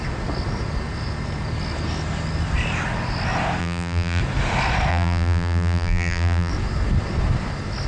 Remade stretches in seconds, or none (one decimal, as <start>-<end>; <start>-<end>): 3.6-4.2; 4.9-6.5